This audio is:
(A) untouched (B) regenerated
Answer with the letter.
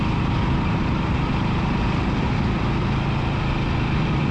A